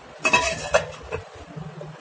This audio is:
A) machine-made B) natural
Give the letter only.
B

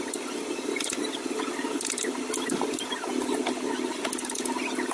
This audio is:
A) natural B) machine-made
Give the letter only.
A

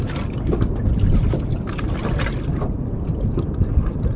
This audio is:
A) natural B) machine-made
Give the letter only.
A